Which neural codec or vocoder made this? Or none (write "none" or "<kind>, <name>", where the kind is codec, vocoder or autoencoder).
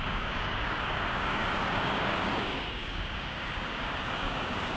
codec, DAC